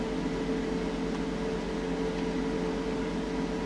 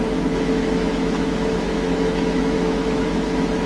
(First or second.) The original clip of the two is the first